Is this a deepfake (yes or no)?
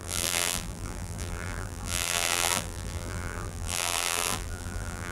yes